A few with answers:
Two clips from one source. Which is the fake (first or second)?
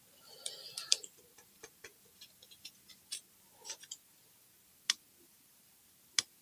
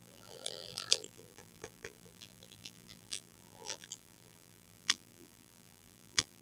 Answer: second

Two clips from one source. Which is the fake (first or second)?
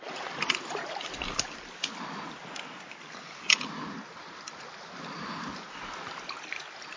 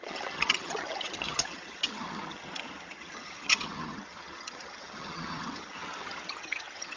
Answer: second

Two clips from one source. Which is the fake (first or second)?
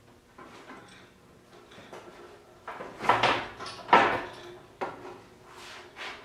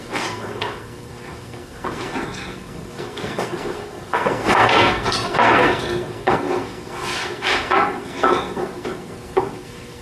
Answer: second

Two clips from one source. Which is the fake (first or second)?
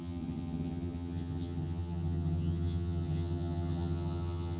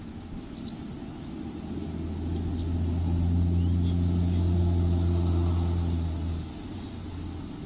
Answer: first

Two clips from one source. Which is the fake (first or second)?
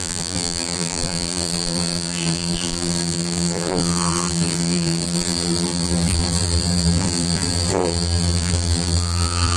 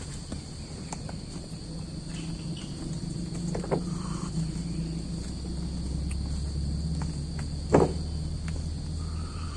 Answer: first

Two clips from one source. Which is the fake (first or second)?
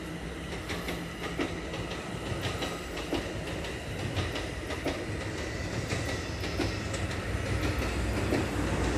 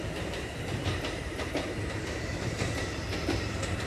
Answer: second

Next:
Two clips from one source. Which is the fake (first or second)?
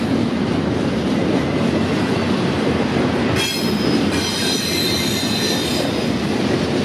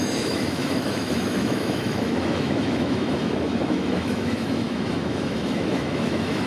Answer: second